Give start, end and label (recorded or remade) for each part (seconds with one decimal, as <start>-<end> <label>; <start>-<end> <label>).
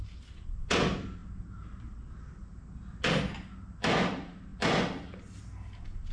0.0-6.1 recorded